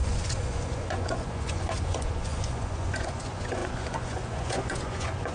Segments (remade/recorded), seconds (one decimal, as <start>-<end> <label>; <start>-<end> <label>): 0.0-5.3 remade